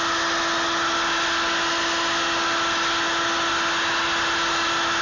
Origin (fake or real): real